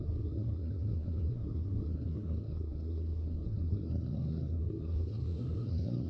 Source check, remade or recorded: remade